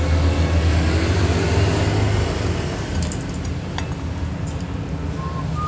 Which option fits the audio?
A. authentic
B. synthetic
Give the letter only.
A